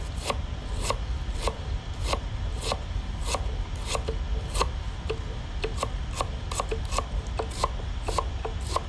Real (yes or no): yes